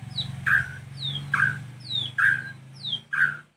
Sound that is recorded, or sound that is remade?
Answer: recorded